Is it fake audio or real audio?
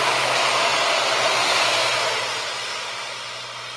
real